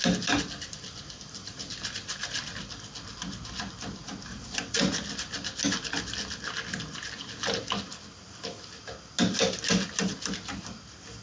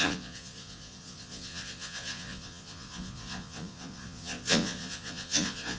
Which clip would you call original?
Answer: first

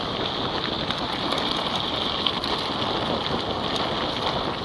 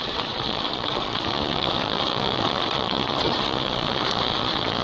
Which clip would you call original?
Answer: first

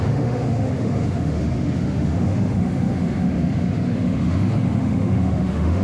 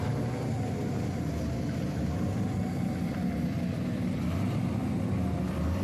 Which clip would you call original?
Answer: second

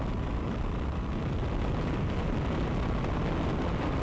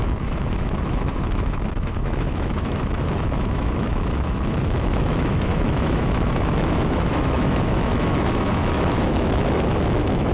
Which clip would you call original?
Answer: first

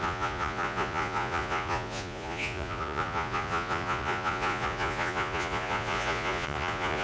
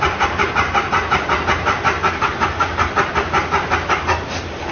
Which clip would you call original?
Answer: second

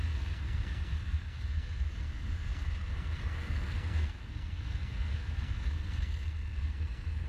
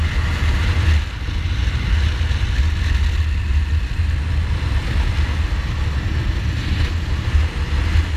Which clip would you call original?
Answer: second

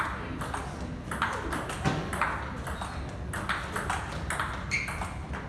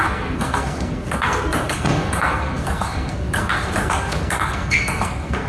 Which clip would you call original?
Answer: first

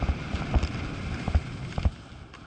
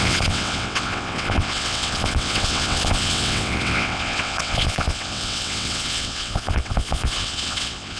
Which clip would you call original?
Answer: first